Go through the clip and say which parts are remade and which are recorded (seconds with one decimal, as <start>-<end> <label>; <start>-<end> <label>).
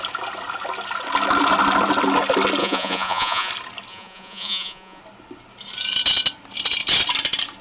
0.0-2.6 recorded; 2.6-3.5 remade; 3.5-3.9 recorded; 3.9-5.0 remade; 5.0-7.6 recorded